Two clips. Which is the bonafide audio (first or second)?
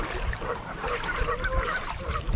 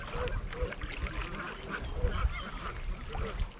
second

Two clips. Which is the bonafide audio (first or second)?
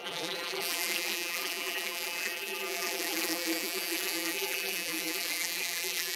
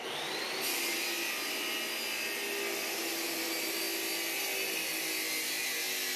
second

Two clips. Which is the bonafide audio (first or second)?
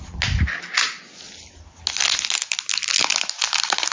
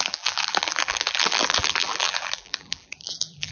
first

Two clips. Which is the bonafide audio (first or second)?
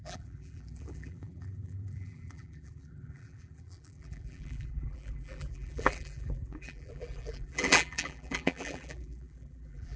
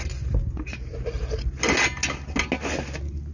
second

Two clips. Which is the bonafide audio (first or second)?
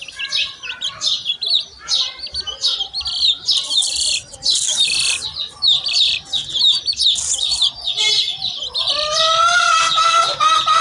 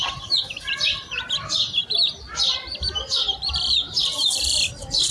first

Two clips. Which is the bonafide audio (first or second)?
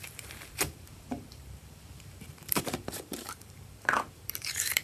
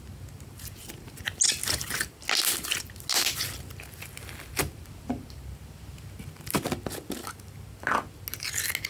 second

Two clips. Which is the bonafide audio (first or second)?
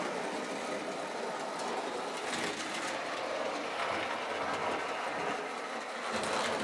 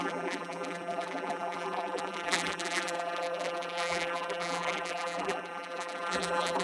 first